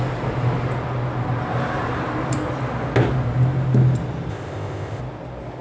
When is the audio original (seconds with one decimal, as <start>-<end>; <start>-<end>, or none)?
0.0-4.3; 5.0-5.6